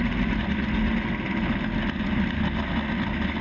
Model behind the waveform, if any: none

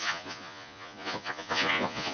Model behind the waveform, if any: vocoder, Vocos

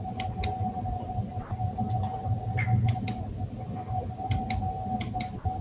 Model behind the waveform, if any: none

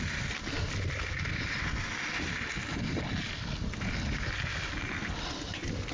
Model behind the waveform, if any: none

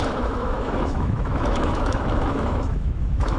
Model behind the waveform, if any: autoencoder, DAC-VAE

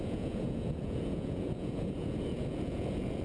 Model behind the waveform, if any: vocoder, Vocos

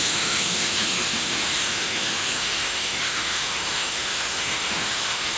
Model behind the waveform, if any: autoencoder, DAC-VAE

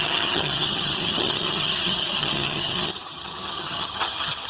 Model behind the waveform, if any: vocoder, HiFi-GAN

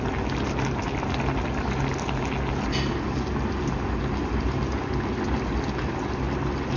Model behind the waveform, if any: none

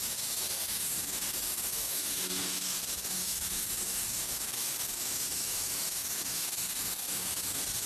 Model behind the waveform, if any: codec, DAC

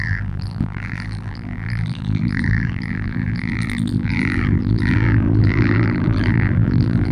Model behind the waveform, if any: vocoder, BigVGAN v2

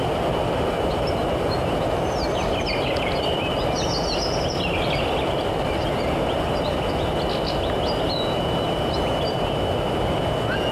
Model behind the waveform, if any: none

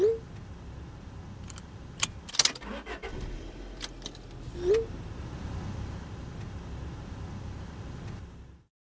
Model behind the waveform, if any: none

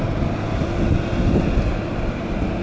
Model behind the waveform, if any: none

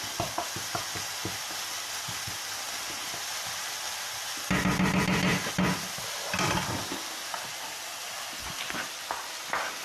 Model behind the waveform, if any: none